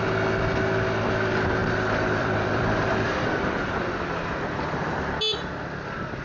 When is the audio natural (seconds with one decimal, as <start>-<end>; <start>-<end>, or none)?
0.0-1.6; 5.2-6.2